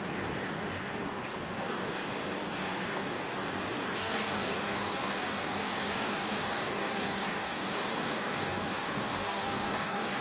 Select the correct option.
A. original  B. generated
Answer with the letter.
B